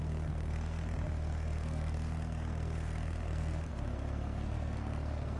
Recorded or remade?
remade